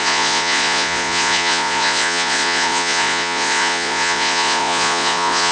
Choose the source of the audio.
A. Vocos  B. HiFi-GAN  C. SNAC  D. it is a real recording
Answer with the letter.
A